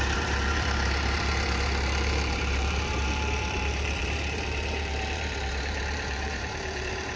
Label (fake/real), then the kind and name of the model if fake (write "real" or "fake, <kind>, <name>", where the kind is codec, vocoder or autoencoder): fake, vocoder, BigVGAN v2